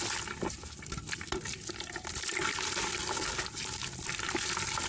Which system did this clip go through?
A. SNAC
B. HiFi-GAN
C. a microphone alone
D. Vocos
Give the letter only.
C